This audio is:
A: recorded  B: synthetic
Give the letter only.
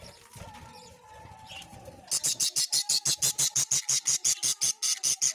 A